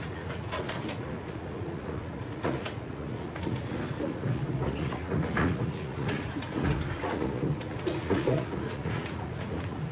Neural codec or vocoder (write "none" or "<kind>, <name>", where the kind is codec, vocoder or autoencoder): vocoder, Vocos